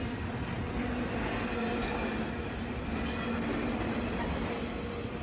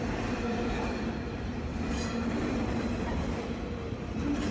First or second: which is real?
first